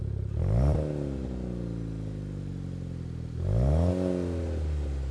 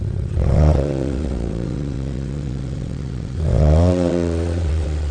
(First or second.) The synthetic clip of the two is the second